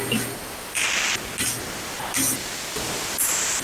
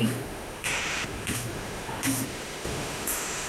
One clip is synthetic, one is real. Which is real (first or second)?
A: first